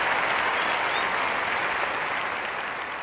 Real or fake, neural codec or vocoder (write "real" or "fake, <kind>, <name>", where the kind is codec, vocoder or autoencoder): real